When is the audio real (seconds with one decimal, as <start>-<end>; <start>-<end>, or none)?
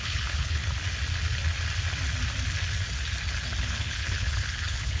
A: 0.6-3.6